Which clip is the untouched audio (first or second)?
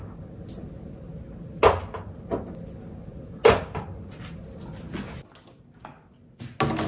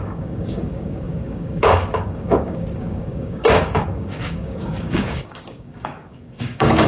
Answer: first